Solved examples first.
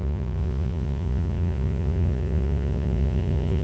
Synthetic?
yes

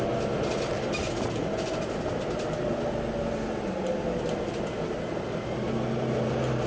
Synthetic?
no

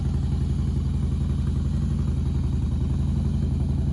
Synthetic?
no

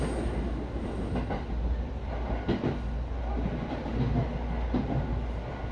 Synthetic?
no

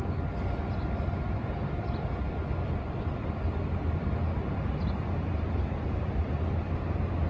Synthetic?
yes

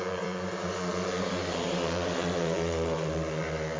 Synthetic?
yes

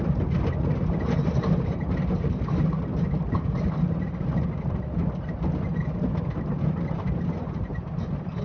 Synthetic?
no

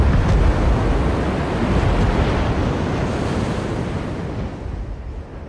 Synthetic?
no